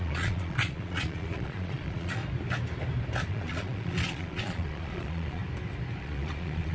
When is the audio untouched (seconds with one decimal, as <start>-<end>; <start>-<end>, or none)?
2.2-3.3; 5.4-6.0